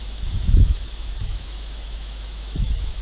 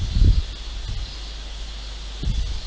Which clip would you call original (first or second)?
second